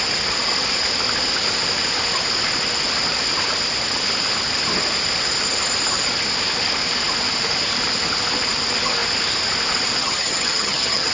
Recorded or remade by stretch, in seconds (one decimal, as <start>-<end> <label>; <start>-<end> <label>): 0.0-10.0 recorded; 10.0-11.1 remade